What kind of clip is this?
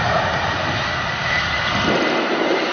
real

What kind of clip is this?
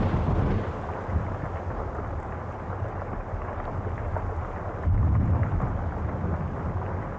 real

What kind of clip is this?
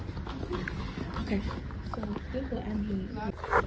real